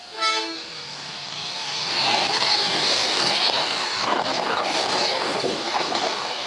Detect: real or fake fake